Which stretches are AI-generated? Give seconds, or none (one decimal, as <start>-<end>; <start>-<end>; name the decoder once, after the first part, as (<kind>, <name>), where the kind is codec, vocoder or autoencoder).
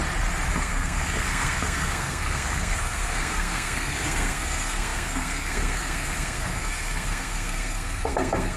0.5-8.6 (codec, SNAC)